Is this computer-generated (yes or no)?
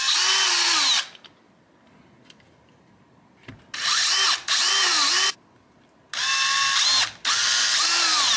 no